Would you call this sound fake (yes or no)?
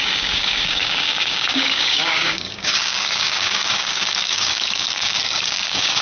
yes